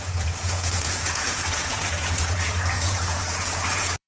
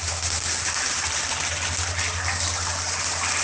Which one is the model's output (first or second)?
first